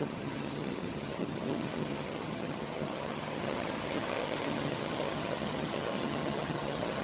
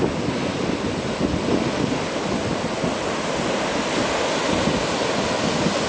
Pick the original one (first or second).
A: second